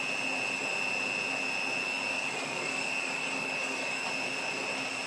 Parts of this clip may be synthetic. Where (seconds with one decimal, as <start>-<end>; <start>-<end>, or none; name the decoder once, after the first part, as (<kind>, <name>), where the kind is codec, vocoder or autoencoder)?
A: 1.8-4.1 (codec, DAC)

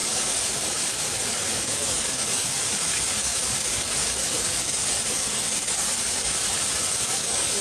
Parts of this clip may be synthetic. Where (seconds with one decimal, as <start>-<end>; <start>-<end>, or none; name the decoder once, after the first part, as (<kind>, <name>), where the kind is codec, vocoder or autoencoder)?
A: 0.0-6.4 (codec, DAC); 6.9-7.6

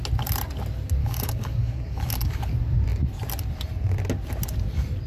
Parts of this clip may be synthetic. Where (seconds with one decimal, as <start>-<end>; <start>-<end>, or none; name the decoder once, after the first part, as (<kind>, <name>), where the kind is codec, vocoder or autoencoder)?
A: 1.0-2.4 (codec, DAC)

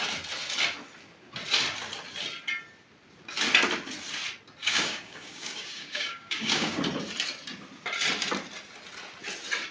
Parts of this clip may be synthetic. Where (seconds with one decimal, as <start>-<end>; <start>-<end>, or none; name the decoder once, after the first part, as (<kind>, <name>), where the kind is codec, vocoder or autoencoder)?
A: 4.6-6.8 (codec, DAC)

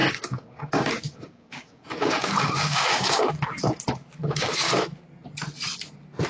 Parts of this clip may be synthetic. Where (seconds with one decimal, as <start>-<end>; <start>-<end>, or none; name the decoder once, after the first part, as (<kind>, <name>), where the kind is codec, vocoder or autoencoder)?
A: 0.0-3.3 (codec, DAC); 4.2-4.7

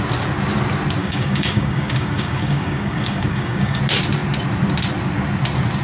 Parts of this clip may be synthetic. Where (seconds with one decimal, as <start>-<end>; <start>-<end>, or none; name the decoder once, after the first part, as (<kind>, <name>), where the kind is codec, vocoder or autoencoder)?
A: 1.0-3.8 (codec, DAC)

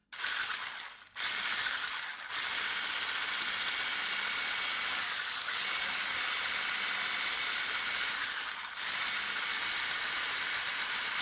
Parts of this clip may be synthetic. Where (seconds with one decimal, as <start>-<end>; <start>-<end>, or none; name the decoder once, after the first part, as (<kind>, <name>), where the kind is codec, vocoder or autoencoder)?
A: 4.9-6.3 (codec, DAC)